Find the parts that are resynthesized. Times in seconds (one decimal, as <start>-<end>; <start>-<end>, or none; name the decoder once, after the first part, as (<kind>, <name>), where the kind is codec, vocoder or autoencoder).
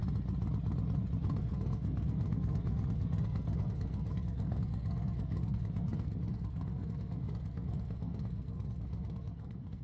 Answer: 1.2-9.8 (codec, SNAC)